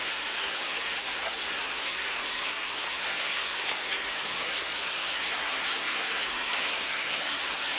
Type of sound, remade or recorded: remade